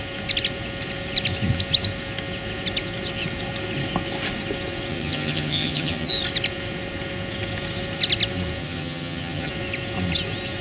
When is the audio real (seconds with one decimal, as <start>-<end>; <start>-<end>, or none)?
0.0-4.9; 6.1-8.6; 9.5-10.6